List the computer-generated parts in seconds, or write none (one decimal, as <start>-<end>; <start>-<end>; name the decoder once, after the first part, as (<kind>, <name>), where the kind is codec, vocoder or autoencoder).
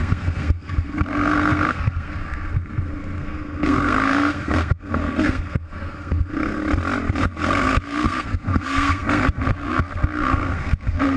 0.0-6.6 (codec, SNAC); 7.2-11.2